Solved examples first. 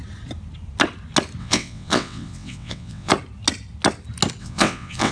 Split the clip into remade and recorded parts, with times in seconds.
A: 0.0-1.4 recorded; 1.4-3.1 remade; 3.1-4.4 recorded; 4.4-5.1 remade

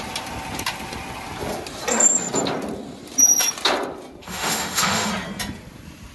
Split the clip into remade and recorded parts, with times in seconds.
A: 0.0-4.2 recorded; 4.2-5.1 remade; 5.1-6.1 recorded

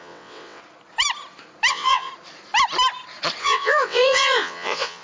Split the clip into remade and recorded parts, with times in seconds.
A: 0.0-0.6 remade; 0.6-1.7 recorded; 1.7-2.1 remade; 2.1-3.4 recorded; 3.4-5.0 remade

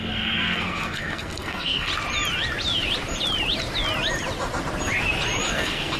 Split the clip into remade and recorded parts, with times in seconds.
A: 0.0-1.9 remade; 1.9-5.5 recorded; 5.5-6.0 remade

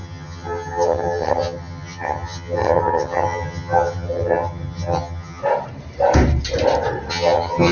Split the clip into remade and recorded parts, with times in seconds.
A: 0.0-5.4 remade; 5.4-7.1 recorded; 7.1-7.7 remade

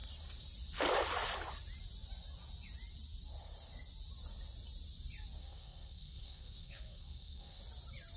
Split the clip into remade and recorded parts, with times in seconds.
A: 0.0-5.4 recorded; 5.4-7.6 remade; 7.6-8.2 recorded